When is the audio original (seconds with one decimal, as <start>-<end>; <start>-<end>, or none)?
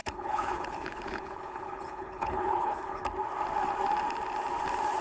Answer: 3.0-5.0